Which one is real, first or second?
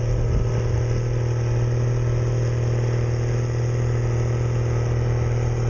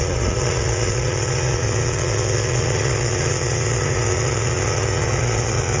first